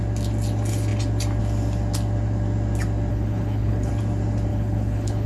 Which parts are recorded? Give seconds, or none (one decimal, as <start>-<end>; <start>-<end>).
0.0-3.1; 3.9-4.5